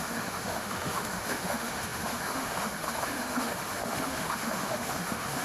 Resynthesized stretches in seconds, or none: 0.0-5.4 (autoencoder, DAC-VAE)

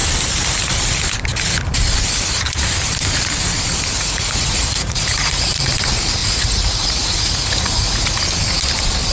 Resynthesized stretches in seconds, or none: 4.0-5.7 (vocoder, Vocos); 6.2-8.2

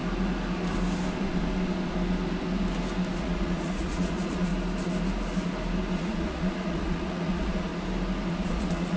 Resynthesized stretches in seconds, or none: 3.2-4.5 (vocoder, Vocos); 5.9-7.7; 8.3-9.0